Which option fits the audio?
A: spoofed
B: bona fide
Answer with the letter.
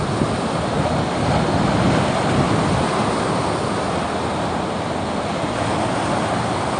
B